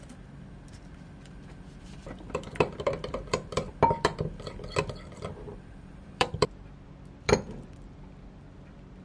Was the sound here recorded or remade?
remade